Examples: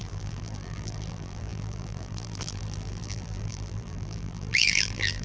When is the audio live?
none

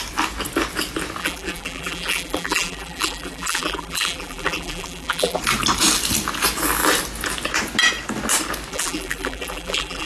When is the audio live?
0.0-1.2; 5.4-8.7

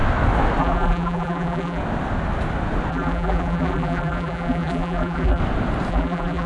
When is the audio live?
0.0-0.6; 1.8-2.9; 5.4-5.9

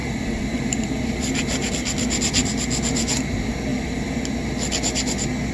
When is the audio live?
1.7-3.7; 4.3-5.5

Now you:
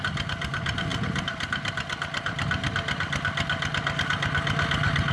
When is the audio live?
0.0-5.1

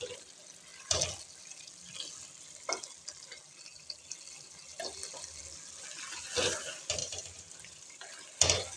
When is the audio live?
0.0-7.0; 8.0-8.8

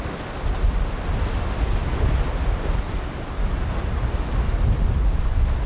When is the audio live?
1.8-5.2